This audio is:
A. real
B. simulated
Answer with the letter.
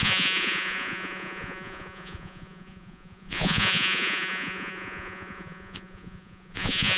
B